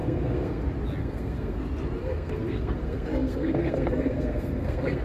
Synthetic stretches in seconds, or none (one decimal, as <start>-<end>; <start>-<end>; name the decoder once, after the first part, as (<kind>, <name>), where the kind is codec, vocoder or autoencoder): 0.0-0.6 (codec, SNAC); 1.0-1.6; 2.0-5.0